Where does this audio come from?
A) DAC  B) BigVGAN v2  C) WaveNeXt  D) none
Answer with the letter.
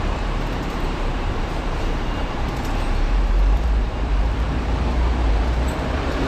B